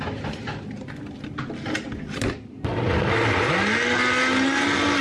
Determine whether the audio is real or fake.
real